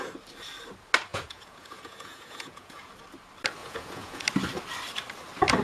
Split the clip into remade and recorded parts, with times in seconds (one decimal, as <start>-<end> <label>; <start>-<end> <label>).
0.0-1.1 recorded; 1.1-2.9 remade; 2.9-3.6 recorded; 3.6-4.2 remade; 4.2-5.6 recorded